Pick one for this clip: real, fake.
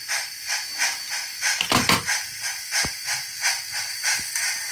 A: real